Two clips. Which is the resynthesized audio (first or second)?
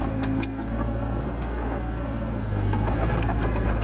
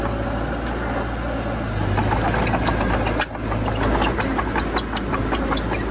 first